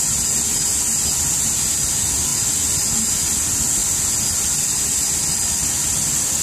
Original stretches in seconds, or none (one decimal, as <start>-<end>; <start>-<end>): 0.0-6.4